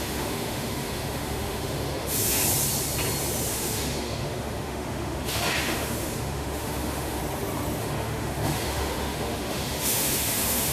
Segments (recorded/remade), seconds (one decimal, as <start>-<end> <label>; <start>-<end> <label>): 0.0-2.4 remade; 2.4-3.5 recorded; 3.5-7.2 remade; 7.2-7.8 recorded; 7.8-10.7 remade